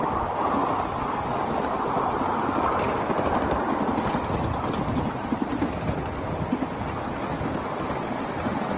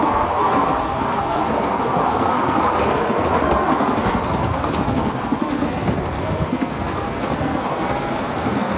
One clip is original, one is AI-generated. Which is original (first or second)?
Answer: first